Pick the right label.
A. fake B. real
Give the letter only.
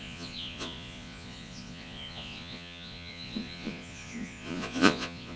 A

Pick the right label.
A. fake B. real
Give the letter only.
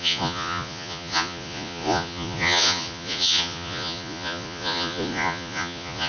A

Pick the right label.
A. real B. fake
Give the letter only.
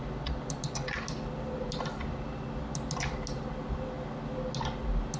A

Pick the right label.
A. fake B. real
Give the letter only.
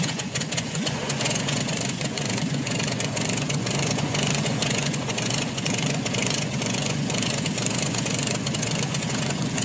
A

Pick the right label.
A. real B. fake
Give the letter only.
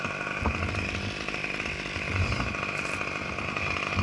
A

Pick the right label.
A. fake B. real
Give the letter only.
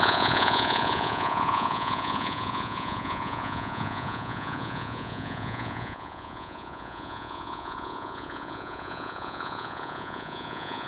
A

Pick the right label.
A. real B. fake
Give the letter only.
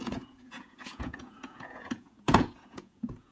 B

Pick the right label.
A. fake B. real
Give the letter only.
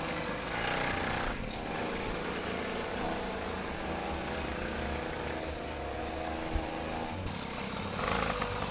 B